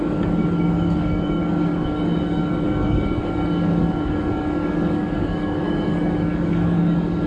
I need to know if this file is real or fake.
fake